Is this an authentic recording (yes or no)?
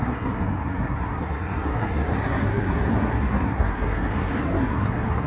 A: no